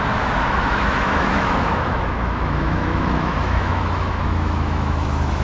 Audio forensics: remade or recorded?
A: remade